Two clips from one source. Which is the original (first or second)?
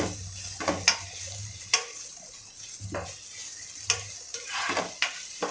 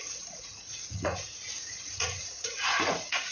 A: first